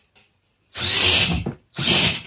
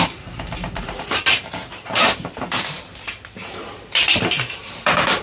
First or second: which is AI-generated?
second